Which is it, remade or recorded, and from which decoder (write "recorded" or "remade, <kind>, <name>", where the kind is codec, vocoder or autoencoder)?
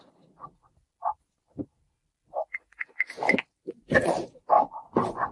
recorded